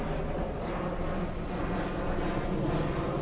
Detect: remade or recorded recorded